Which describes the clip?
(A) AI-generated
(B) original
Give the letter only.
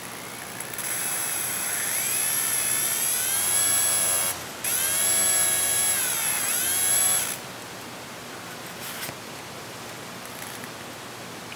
A